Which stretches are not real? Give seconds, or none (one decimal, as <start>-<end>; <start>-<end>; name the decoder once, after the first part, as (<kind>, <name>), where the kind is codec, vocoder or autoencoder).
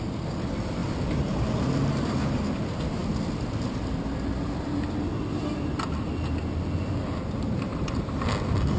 7.0-8.2 (vocoder, BigVGAN v2)